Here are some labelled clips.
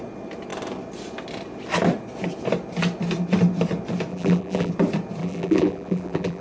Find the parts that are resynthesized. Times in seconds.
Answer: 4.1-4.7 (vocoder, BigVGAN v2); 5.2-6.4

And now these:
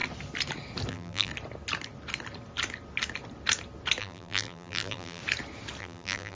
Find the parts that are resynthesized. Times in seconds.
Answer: 0.9-1.3 (vocoder, BigVGAN v2); 4.0-5.2; 5.8-6.4

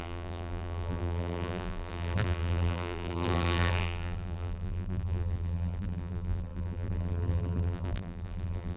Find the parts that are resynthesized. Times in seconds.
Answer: 0.0-8.8 (vocoder, BigVGAN v2)

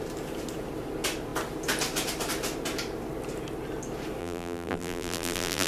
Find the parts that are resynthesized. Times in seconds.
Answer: 4.2-5.7 (vocoder, BigVGAN v2)